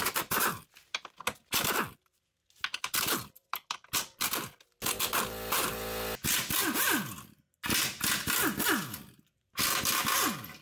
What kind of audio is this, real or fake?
real